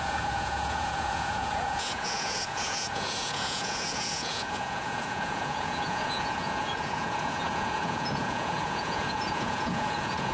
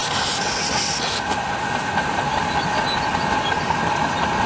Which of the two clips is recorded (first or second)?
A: second